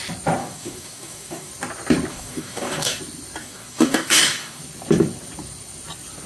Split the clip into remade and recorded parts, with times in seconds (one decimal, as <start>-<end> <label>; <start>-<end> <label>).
0.0-0.4 recorded; 0.4-1.5 remade; 1.5-2.1 recorded; 2.1-3.0 remade; 3.0-3.4 recorded; 3.4-4.6 remade; 4.6-6.3 recorded